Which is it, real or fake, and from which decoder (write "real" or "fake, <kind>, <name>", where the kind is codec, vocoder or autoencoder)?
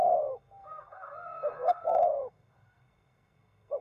fake, codec, SNAC